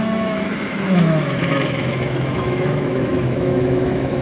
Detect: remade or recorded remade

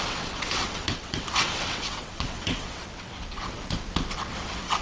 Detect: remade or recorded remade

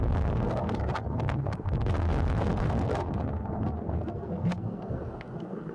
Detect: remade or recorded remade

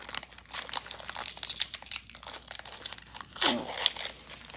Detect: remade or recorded recorded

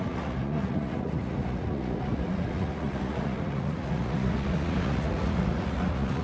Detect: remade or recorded remade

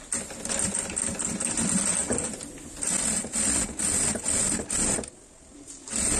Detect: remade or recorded recorded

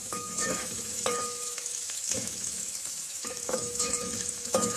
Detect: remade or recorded remade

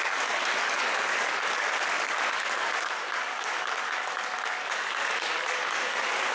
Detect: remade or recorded remade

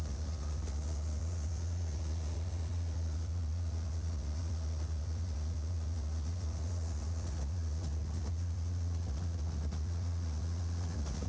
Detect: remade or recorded remade